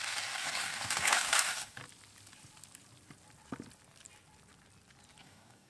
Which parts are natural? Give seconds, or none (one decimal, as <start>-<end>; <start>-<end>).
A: 1.8-5.2